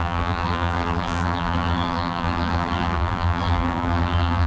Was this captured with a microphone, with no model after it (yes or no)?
no